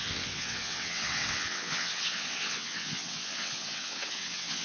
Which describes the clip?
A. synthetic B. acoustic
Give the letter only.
A